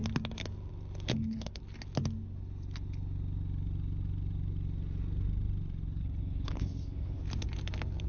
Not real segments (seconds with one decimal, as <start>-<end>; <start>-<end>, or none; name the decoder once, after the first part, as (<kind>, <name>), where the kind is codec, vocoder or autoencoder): 1.1-1.6 (codec, HILCodec); 6.0-7.2